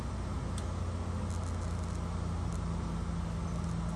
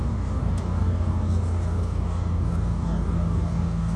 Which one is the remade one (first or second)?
second